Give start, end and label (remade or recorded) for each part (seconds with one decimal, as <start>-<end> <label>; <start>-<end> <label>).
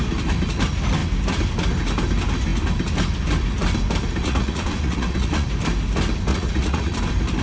0.0-4.2 recorded; 4.2-5.5 remade; 5.5-6.3 recorded; 6.3-7.0 remade; 7.0-7.4 recorded